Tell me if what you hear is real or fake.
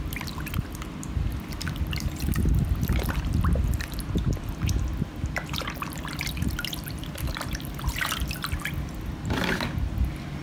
real